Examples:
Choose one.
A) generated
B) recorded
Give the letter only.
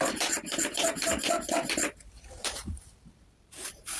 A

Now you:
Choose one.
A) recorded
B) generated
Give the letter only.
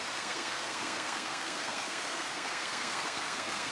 B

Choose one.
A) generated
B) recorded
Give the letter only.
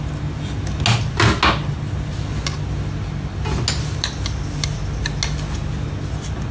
B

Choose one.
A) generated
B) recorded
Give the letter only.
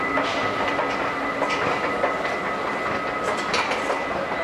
B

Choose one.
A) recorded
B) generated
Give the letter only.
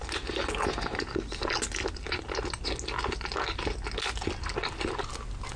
A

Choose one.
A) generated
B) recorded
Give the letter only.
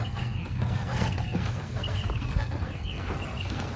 A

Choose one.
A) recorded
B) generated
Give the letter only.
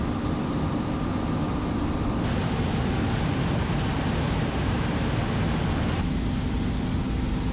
A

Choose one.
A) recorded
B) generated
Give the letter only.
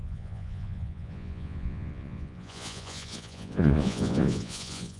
B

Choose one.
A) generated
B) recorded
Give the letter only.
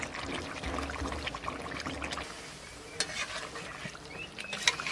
B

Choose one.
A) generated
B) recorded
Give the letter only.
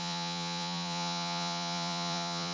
A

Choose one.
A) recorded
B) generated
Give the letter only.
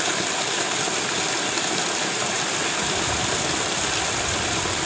A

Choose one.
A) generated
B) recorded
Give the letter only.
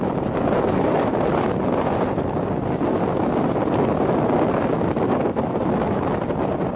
B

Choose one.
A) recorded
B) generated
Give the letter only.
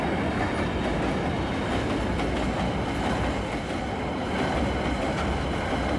A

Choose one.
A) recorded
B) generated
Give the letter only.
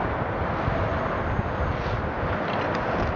A